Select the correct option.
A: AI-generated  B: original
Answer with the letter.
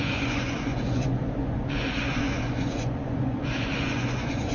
A